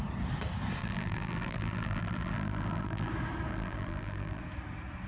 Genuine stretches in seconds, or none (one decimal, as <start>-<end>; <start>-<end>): 0.0-0.8; 3.1-3.5; 4.4-5.1